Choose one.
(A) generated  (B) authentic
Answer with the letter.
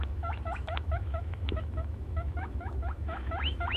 A